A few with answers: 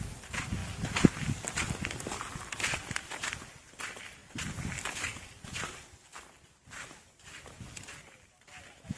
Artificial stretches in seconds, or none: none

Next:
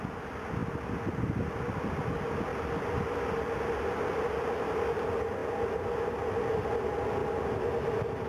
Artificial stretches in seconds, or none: none

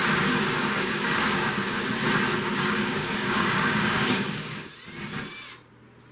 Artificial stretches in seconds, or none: 0.0-1.9 (codec, DAC); 2.5-4.7

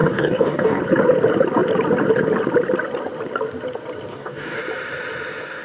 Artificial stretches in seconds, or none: 0.0-0.8 (codec, DAC); 4.1-4.6

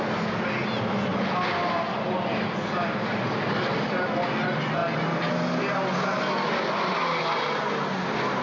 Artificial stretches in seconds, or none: none

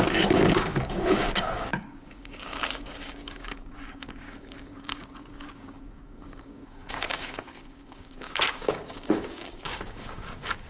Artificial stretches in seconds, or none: 0.0-10.7 (codec, DAC)